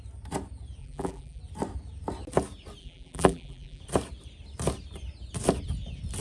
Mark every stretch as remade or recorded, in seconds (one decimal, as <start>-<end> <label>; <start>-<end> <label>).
0.0-0.8 recorded; 0.8-1.4 remade; 1.4-2.8 recorded; 2.8-3.8 remade; 3.8-6.2 recorded